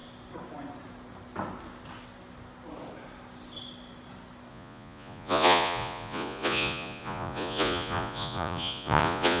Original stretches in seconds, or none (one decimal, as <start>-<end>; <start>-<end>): 0.0-4.5